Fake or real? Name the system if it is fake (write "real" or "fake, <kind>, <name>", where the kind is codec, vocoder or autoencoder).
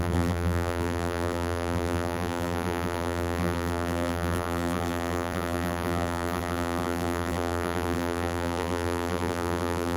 fake, vocoder, BigVGAN v2